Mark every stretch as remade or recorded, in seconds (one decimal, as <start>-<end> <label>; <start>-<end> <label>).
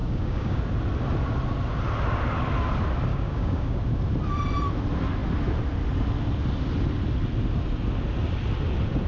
0.0-0.6 remade; 0.6-3.1 recorded; 3.1-3.8 remade; 3.8-9.1 recorded